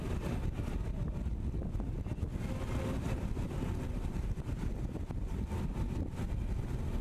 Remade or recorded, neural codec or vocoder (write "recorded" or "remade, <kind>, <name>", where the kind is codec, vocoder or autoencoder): recorded